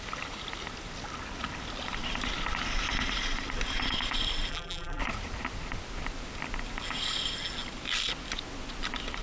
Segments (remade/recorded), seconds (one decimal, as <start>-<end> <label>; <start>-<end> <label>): 0.0-4.5 recorded; 4.5-5.0 remade; 5.0-9.2 recorded